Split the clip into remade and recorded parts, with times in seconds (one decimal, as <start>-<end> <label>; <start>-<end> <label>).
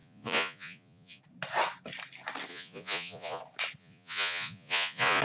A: 0.0-1.2 remade; 1.2-2.5 recorded; 2.5-3.4 remade; 3.4-3.8 recorded; 3.8-5.2 remade